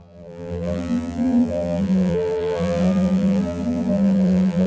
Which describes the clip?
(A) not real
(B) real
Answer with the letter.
A